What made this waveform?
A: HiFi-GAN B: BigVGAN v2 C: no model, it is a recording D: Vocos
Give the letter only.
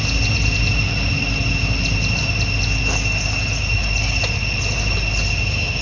C